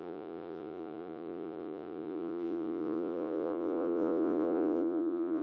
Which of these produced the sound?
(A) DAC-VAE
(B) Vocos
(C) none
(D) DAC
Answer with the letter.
B